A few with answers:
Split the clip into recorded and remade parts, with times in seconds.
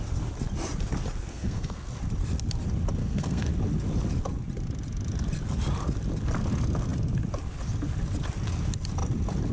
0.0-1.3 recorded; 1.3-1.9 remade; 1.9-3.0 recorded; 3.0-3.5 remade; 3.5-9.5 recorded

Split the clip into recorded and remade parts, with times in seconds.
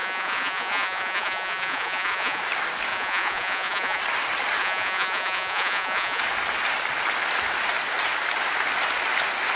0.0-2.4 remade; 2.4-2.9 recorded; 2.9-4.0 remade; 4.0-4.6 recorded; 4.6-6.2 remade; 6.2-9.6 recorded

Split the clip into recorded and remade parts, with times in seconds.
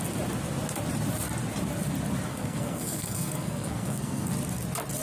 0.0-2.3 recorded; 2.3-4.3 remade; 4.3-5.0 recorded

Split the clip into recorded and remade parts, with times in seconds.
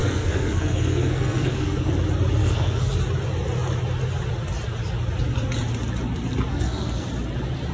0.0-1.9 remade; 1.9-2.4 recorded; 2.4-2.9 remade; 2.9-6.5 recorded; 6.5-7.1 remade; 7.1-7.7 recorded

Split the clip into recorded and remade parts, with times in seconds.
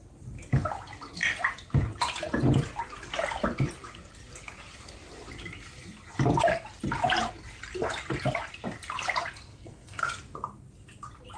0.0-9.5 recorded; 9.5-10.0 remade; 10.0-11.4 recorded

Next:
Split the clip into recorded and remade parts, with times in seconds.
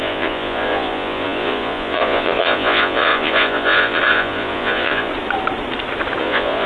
0.0-5.1 remade; 5.1-6.2 recorded; 6.2-6.7 remade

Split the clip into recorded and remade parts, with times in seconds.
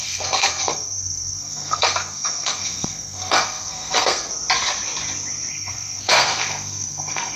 0.0-4.3 remade; 4.3-5.5 recorded; 5.5-7.4 remade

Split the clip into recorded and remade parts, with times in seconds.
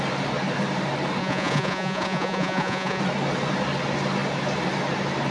0.0-1.2 recorded; 1.2-3.0 remade; 3.0-5.3 recorded